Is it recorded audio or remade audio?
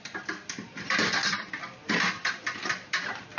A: remade